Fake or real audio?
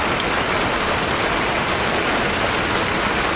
real